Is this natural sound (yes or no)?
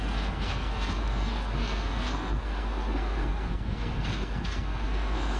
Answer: no